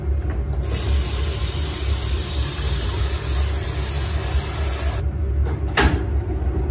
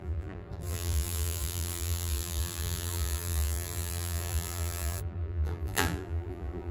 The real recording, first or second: first